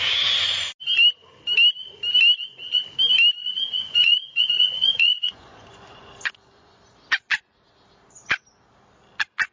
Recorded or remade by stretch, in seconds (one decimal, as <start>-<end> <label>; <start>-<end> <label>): 0.0-3.4 recorded; 3.4-6.8 remade; 6.8-9.5 recorded